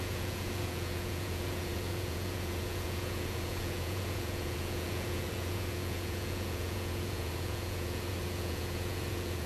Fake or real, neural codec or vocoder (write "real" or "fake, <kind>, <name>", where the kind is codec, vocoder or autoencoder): fake, vocoder, Vocos